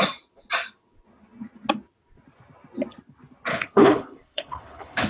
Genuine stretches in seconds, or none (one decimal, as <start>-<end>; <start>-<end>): 0.0-3.5